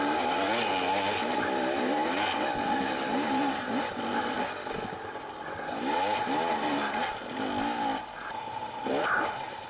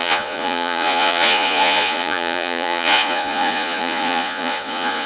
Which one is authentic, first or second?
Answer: first